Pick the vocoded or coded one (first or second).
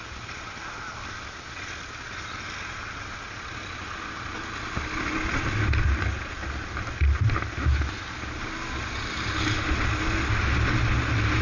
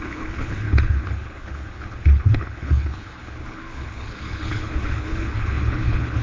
second